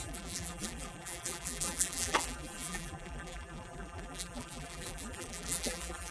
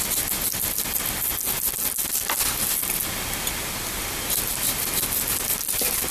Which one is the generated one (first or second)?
first